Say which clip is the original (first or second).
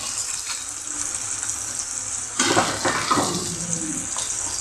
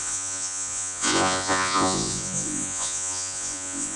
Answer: first